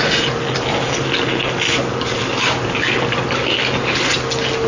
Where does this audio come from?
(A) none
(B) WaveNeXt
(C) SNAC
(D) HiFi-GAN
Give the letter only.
A